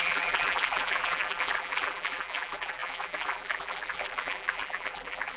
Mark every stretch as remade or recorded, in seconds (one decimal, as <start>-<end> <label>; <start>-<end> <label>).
0.0-5.4 remade